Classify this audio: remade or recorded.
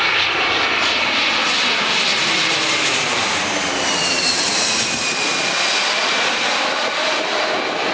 remade